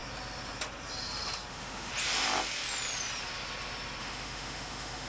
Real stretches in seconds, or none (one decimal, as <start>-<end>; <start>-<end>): 0.0-1.5; 1.9-4.0